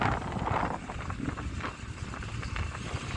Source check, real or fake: real